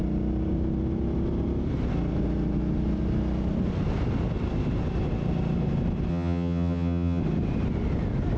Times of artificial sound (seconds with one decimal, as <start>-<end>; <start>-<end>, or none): 6.1-7.2